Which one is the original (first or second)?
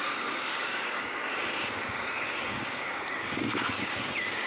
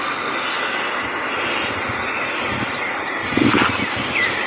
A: second